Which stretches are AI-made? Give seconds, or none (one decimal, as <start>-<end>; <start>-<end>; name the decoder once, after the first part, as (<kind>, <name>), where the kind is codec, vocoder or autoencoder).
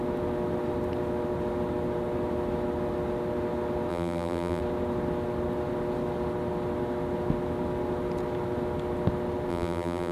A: 3.9-4.6 (vocoder, BigVGAN v2); 9.5-10.1